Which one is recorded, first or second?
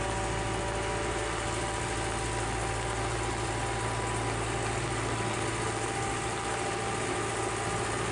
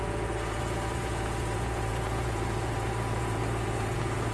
first